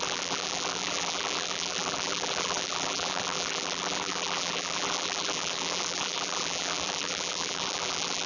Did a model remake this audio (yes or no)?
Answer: yes